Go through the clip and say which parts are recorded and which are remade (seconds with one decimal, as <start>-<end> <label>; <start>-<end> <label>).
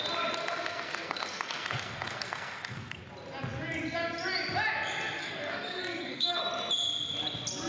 0.0-0.4 recorded; 0.4-3.0 remade; 3.0-5.2 recorded; 5.2-6.4 remade; 6.4-7.7 recorded